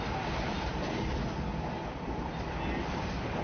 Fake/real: real